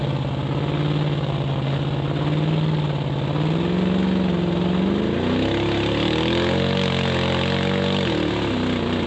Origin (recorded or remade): recorded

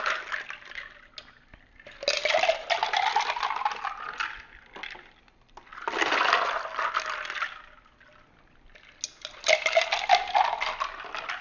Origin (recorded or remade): recorded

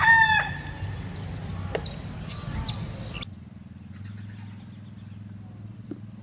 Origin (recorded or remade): recorded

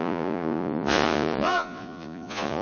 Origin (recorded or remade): remade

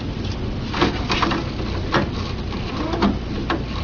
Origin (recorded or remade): recorded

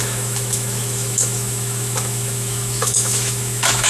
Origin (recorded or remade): remade